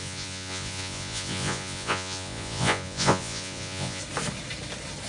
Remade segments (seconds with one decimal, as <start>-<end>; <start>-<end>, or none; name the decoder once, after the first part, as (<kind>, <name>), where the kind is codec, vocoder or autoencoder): 0.0-4.0 (vocoder, Vocos)